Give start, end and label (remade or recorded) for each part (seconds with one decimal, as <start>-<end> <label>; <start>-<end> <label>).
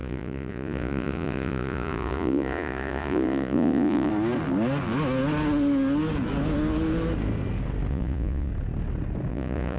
0.0-4.1 remade; 4.1-7.9 recorded; 7.9-8.5 remade; 8.5-9.3 recorded; 9.3-9.8 remade